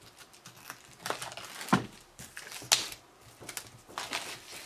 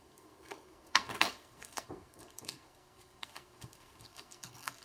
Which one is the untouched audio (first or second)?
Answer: first